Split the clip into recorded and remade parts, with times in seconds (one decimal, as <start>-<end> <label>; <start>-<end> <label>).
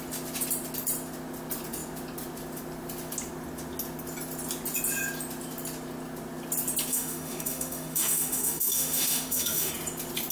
0.0-6.9 recorded; 6.9-9.7 remade; 9.7-10.3 recorded